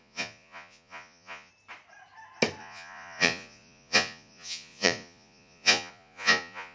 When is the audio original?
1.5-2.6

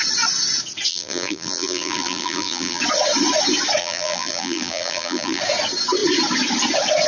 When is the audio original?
0.0-0.9; 2.8-3.8; 5.4-7.1

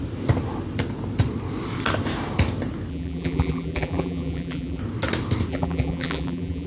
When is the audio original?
0.0-2.9; 4.8-5.5

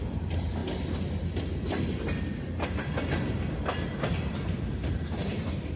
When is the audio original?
0.6-4.1